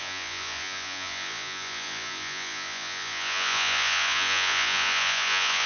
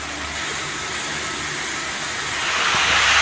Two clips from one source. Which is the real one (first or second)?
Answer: second